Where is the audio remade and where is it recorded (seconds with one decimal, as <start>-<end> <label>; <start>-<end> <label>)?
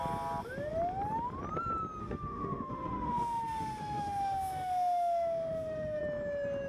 0.0-2.0 recorded; 2.0-6.0 remade; 6.0-6.7 recorded